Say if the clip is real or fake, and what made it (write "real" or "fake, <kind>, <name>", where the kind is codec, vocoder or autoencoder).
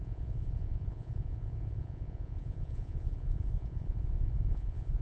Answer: fake, vocoder, Vocos